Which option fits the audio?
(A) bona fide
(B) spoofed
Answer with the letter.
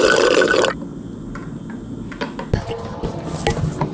A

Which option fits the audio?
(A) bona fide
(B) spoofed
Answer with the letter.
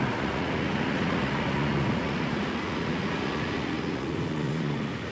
B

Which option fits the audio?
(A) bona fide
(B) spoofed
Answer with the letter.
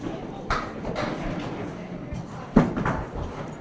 A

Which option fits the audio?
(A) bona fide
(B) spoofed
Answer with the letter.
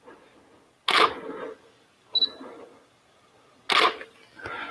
A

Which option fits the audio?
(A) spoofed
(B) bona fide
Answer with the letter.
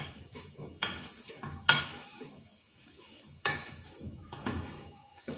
A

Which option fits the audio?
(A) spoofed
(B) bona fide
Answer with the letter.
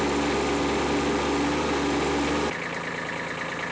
B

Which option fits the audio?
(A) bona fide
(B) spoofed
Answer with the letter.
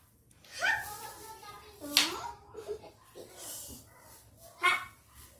A